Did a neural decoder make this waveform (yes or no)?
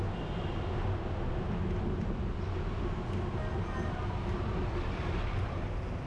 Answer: no